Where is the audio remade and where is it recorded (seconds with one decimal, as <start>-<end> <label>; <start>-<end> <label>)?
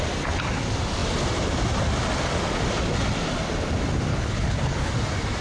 0.0-4.1 recorded; 4.1-4.9 remade; 4.9-5.4 recorded